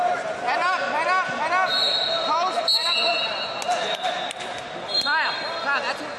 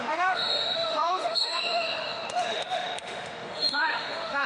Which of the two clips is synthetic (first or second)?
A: second